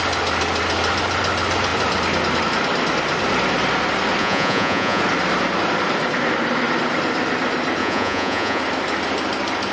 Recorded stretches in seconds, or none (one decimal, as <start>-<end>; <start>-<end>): 0.0-4.2; 5.0-7.8; 8.6-9.7